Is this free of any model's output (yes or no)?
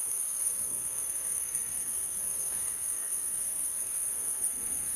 no